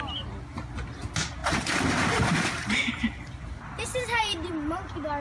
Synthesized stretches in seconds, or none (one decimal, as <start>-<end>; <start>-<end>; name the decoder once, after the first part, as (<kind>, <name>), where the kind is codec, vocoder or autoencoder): 1.4-4.5 (vocoder, BigVGAN v2)